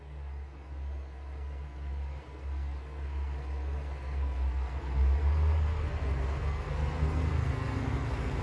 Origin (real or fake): fake